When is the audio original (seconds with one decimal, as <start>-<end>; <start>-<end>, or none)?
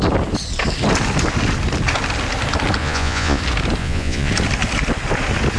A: 0.0-2.8; 3.4-3.8; 4.3-5.6